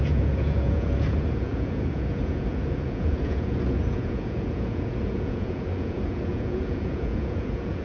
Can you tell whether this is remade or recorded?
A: remade